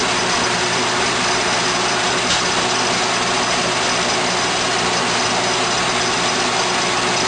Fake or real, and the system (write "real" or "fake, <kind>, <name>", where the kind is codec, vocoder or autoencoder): real